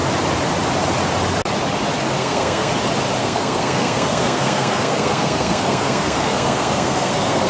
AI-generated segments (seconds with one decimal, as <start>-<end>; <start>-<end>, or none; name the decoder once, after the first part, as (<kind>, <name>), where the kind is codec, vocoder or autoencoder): 2.2-2.7 (codec, SNAC); 3.2-7.5